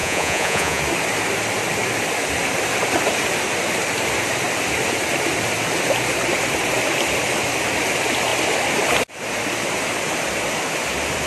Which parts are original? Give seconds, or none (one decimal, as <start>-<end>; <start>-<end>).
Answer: 0.8-11.3